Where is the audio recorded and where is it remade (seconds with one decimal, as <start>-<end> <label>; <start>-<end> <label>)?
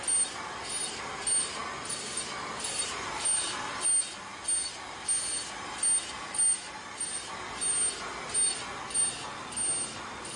0.0-10.4 recorded